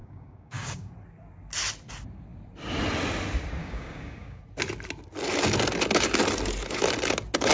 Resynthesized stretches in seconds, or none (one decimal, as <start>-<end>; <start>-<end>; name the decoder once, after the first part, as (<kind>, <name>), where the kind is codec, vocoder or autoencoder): 0.0-0.9 (codec, DAC); 3.6-4.4